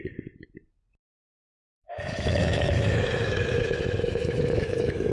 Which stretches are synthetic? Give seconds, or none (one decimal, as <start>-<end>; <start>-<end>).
1.7-5.1